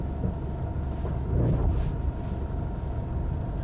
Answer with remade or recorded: recorded